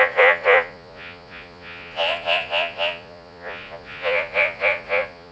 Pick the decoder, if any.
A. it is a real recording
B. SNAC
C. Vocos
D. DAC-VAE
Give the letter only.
C